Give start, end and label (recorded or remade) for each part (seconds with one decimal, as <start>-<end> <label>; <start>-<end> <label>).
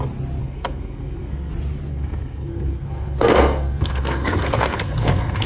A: 0.0-0.4 recorded; 0.4-1.5 remade; 1.5-1.9 recorded; 1.9-5.5 remade